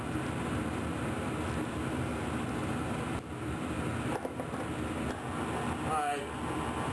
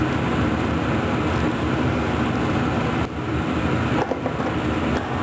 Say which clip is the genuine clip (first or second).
first